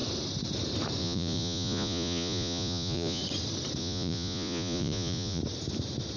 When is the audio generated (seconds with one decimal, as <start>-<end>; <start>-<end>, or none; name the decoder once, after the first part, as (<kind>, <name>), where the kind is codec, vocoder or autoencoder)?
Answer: 1.0-3.2 (vocoder, Vocos); 3.8-5.4